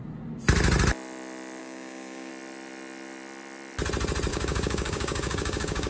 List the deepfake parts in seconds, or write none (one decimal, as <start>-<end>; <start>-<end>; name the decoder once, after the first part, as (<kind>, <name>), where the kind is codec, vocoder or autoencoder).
1.6-2.3 (codec, DAC); 4.3-5.9